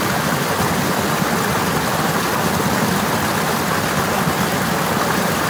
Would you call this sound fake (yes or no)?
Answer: no